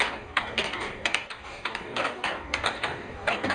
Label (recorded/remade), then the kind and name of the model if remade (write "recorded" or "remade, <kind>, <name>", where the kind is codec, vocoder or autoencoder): remade, codec, DAC